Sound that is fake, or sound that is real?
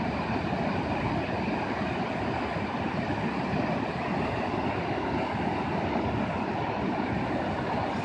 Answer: real